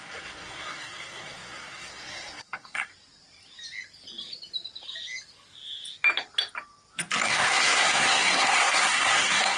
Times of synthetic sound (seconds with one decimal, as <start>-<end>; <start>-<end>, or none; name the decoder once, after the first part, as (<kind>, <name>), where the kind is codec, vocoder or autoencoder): 0.0-2.9 (codec, SNAC); 7.2-9.6